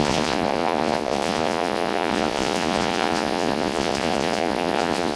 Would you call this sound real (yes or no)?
no